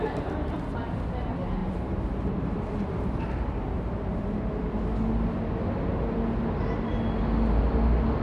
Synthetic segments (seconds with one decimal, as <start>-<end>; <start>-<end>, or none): 1.6-4.2